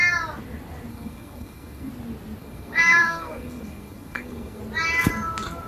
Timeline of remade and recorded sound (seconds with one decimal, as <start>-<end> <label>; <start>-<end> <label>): 0.0-0.9 recorded; 0.9-1.9 remade; 1.9-2.4 recorded; 2.4-4.6 remade; 4.6-5.7 recorded